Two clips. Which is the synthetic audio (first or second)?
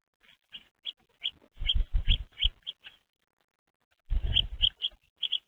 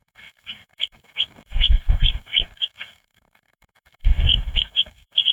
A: second